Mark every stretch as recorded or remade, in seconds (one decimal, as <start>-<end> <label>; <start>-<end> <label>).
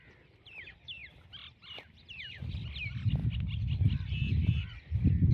0.0-1.0 recorded; 1.0-2.8 remade; 2.8-5.3 recorded